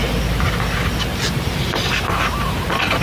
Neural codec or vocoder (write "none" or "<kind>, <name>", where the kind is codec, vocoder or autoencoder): none